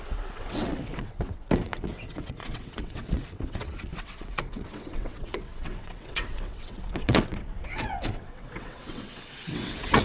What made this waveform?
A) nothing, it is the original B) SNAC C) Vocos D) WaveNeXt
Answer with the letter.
D